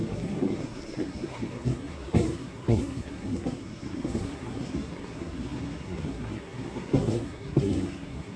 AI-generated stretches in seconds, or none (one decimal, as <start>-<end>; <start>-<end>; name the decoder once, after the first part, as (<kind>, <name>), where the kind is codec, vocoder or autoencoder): 0.0-8.4 (codec, SNAC)